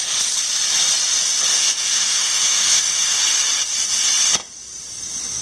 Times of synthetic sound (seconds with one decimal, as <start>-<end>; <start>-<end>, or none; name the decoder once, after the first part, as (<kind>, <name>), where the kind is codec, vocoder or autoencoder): 1.5-3.2 (autoencoder, DAC-VAE)